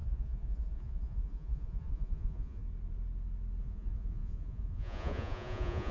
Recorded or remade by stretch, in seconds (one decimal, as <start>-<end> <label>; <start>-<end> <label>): 0.0-2.6 remade; 2.6-3.6 recorded; 3.6-5.9 remade